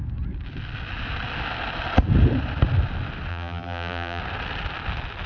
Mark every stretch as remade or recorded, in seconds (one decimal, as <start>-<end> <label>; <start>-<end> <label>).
0.0-3.3 recorded; 3.3-4.2 remade; 4.2-5.3 recorded